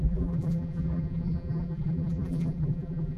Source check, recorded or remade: remade